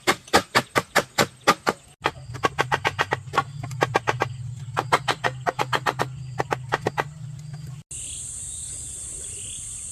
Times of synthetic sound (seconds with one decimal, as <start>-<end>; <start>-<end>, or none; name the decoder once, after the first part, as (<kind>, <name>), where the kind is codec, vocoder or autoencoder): none